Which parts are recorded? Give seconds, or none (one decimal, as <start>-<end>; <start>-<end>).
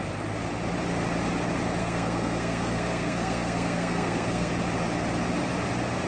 0.0-1.8; 4.5-6.1